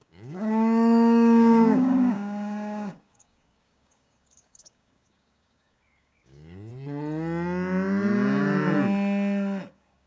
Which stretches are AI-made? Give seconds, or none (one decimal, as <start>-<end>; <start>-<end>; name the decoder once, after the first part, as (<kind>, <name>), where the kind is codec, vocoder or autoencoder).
0.0-6.7 (codec, DAC); 9.7-10.1